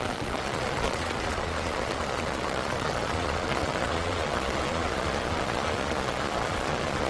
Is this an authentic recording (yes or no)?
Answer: no